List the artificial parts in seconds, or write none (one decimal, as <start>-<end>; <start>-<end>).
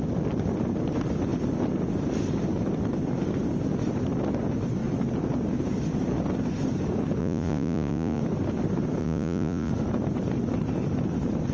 7.2-8.2; 9.0-9.7